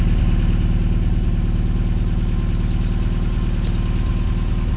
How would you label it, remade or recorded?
recorded